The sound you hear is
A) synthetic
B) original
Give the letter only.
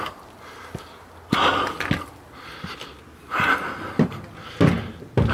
B